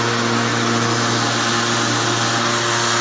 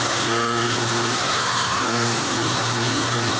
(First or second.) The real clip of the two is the first